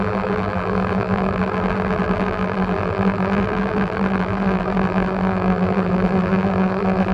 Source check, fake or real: fake